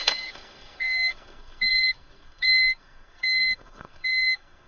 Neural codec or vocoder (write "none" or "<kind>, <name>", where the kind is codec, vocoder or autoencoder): codec, SNAC